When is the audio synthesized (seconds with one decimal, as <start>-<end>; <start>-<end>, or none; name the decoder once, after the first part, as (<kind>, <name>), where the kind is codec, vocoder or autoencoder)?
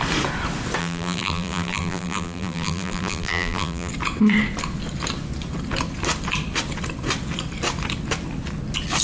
0.8-3.9 (vocoder, BigVGAN v2)